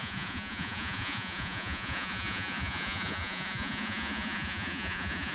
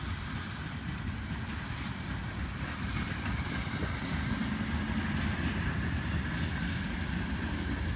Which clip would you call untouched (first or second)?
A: second